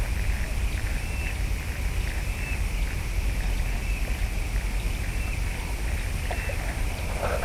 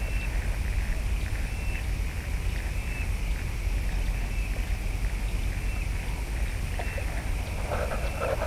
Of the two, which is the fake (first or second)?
first